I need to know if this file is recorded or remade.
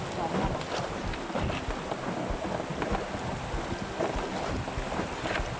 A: recorded